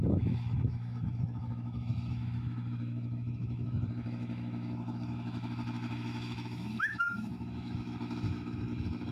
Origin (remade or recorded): remade